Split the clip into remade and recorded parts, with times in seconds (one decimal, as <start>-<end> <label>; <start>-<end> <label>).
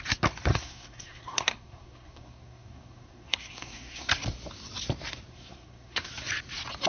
0.0-0.5 recorded; 0.5-4.1 remade; 4.1-5.3 recorded; 5.3-6.1 remade; 6.1-6.9 recorded